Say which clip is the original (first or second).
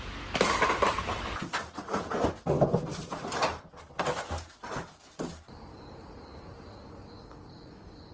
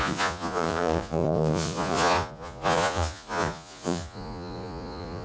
first